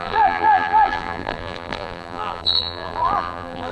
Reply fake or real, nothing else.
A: fake